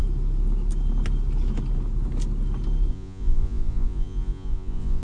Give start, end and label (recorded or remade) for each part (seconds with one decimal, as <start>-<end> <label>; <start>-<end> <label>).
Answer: 0.0-2.9 recorded; 2.9-5.0 remade